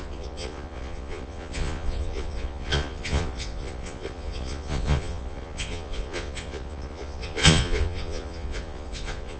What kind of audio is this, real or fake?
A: fake